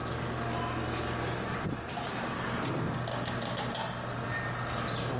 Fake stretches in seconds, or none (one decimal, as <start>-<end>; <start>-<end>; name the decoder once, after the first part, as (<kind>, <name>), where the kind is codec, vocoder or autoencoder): none